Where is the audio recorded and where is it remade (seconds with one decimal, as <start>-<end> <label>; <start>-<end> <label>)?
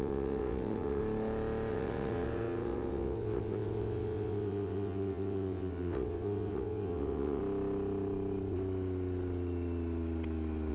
0.0-1.0 remade; 1.0-1.7 recorded; 1.7-7.4 remade; 7.4-10.7 recorded